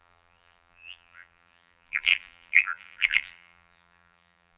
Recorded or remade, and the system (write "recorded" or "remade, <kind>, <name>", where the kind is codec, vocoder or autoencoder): remade, vocoder, BigVGAN v2